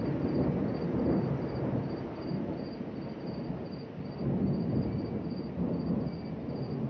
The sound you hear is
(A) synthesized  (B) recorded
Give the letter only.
B